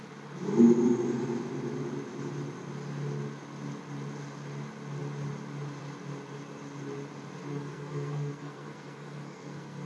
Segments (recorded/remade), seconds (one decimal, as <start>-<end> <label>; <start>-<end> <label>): 0.0-7.5 recorded; 7.5-9.9 remade